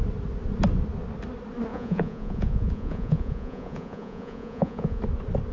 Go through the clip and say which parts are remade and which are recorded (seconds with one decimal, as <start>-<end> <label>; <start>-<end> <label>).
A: 0.0-1.7 recorded; 1.7-5.0 remade; 5.0-5.5 recorded

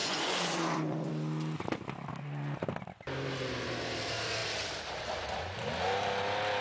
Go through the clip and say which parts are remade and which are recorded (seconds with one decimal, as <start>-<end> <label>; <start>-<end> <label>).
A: 0.0-1.1 remade; 1.1-6.6 recorded

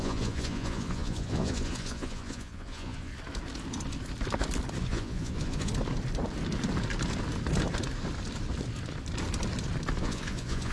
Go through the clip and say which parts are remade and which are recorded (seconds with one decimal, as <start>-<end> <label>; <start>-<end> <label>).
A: 0.0-3.1 remade; 3.1-4.8 recorded; 4.8-5.7 remade; 5.7-10.0 recorded; 10.0-10.7 remade

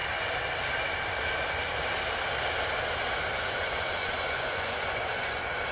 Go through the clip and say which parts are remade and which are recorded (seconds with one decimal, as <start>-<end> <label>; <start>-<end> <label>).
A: 0.0-3.4 recorded; 3.4-5.7 remade

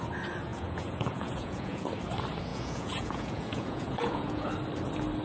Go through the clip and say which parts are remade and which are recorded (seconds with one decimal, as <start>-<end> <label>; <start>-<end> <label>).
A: 0.0-0.5 recorded; 0.5-1.9 remade; 1.9-2.5 recorded; 2.5-4.5 remade; 4.5-5.2 recorded

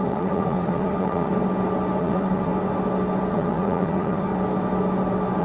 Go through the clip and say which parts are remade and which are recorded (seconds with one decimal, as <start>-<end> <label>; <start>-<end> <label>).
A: 0.0-1.3 remade; 1.3-2.0 recorded; 2.0-2.5 remade; 2.5-3.3 recorded; 3.3-4.3 remade; 4.3-5.4 recorded

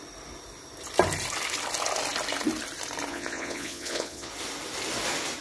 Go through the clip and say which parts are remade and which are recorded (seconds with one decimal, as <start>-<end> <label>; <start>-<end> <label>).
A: 0.0-3.1 recorded; 3.1-4.3 remade; 4.3-5.4 recorded

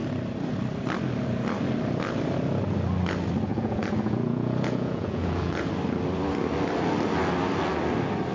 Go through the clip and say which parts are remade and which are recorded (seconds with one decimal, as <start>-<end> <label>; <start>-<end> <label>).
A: 0.0-3.5 recorded; 3.5-5.7 remade; 5.7-8.3 recorded